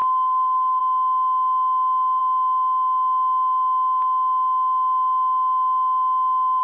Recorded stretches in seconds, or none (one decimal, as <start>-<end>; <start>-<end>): 0.8-6.6